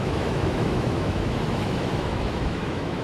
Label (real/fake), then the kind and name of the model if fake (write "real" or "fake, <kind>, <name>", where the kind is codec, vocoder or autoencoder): fake, autoencoder, DAC-VAE